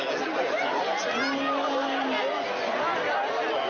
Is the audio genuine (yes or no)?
yes